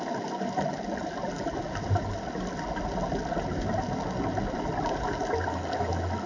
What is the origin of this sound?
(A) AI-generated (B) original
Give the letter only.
B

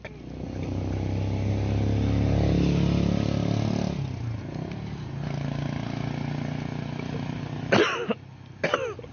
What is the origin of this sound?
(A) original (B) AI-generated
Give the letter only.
A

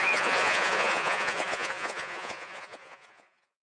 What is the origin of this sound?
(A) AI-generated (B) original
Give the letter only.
A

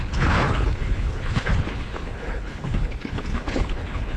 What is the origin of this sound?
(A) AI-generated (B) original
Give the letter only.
A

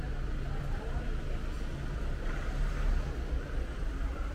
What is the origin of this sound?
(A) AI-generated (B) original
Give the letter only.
B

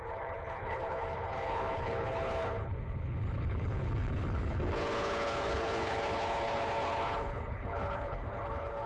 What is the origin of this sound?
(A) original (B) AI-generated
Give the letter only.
B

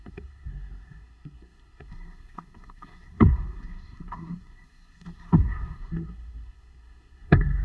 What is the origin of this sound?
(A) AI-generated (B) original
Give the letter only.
A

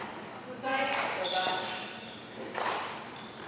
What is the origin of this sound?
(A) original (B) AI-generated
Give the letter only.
A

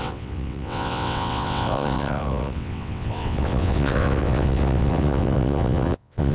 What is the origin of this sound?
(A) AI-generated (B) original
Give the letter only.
A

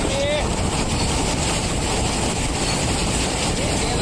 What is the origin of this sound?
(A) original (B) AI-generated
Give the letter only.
A